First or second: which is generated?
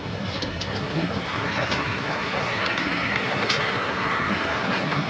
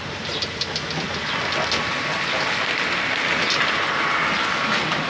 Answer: first